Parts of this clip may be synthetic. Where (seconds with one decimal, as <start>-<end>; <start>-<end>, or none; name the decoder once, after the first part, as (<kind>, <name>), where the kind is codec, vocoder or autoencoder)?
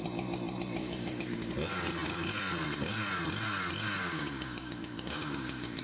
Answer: 0.8-1.5 (codec, DAC); 4.0-5.8